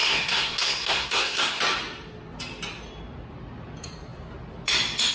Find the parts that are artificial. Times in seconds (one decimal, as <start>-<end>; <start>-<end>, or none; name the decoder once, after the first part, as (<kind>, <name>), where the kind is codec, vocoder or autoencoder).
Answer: 0.0-1.6 (codec, SNAC)